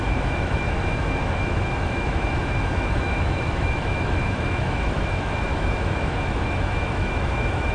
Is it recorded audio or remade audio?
remade